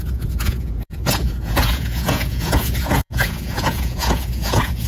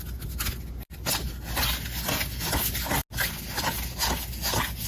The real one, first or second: second